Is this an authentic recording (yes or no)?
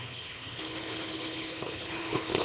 no